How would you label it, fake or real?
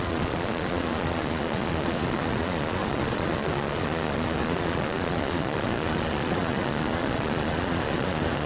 fake